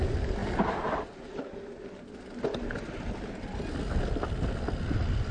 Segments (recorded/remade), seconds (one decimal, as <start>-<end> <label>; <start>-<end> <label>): 0.0-5.3 recorded